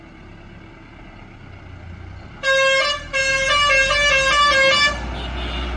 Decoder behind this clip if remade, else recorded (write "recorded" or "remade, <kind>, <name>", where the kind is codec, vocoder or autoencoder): recorded